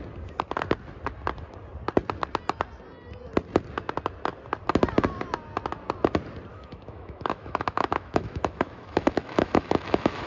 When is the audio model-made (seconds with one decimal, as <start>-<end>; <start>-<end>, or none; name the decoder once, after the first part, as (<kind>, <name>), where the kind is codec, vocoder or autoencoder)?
6.5-10.3 (autoencoder, DAC-VAE)